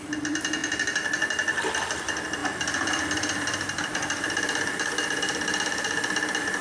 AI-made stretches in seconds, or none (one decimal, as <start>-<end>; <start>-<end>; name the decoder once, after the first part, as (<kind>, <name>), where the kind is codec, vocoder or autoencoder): 2.4-6.6 (vocoder, BigVGAN v2)